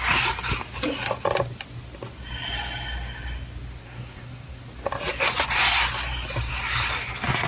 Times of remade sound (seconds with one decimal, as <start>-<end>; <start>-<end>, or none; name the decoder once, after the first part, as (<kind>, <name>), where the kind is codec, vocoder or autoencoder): 3.8-4.6 (codec, SNAC)